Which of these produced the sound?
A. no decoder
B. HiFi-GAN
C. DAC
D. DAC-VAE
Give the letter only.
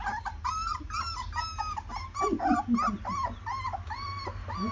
A